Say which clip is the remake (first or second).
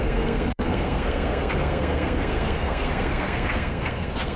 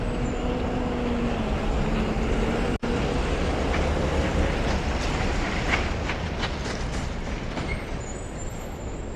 first